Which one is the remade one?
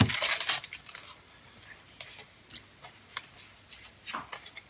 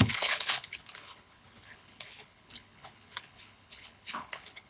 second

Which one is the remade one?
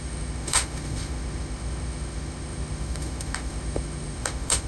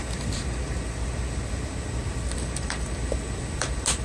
first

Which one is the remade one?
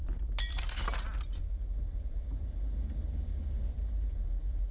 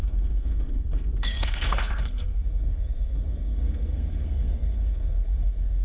second